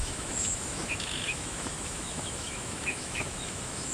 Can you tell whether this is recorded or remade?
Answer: remade